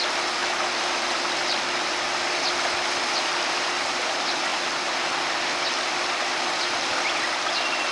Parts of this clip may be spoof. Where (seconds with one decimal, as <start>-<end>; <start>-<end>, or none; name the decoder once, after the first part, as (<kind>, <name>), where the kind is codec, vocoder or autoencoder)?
none